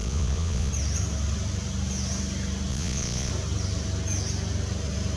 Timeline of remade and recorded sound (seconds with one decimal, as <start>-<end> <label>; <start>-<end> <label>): 0.0-0.7 remade; 0.7-2.7 recorded; 2.7-3.3 remade; 3.3-5.2 recorded